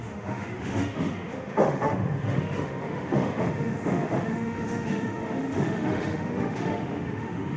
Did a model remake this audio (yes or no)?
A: yes